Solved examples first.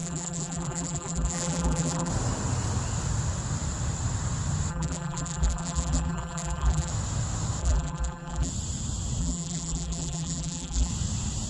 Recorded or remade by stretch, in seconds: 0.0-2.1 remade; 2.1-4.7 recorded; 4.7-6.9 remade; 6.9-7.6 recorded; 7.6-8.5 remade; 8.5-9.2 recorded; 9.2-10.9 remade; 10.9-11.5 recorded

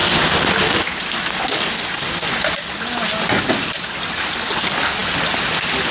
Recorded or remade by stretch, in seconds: 0.0-5.9 recorded